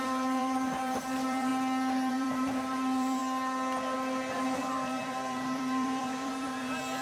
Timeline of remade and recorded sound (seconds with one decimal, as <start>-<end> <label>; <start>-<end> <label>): 0.0-1.5 remade; 1.5-2.1 recorded; 2.1-3.2 remade; 3.2-4.6 recorded; 4.6-7.0 remade